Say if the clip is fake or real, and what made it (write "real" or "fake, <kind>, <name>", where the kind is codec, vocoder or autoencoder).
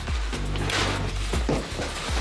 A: real